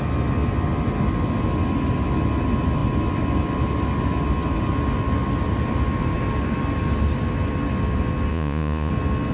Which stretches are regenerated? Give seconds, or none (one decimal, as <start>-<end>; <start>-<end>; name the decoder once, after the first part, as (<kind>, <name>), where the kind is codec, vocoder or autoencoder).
8.3-8.9 (vocoder, Vocos)

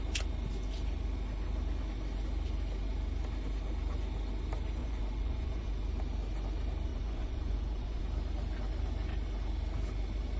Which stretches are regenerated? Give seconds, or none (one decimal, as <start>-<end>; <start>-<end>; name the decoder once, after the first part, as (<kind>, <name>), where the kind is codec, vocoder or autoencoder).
4.8-5.7 (vocoder, Vocos); 6.9-8.0

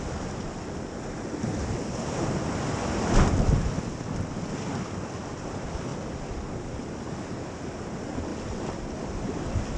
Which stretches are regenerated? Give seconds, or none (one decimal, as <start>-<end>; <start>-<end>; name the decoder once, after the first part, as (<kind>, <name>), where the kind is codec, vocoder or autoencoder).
none